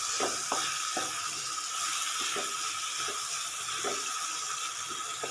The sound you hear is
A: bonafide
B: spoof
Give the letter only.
A